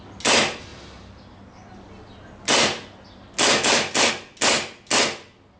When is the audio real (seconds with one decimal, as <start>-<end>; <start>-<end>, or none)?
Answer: 0.0-5.6